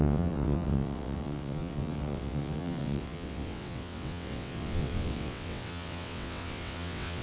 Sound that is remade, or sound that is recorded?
remade